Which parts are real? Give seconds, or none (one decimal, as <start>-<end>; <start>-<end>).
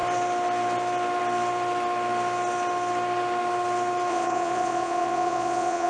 0.0-4.1